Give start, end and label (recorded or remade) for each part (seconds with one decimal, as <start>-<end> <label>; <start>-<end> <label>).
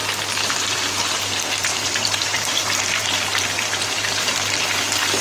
0.0-1.7 recorded; 1.7-4.8 remade; 4.8-5.2 recorded